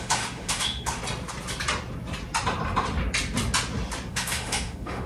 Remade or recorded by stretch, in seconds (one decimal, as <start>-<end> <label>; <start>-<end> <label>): 0.0-1.0 remade; 1.0-4.1 recorded; 4.1-5.1 remade